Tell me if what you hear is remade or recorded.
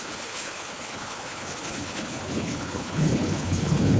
remade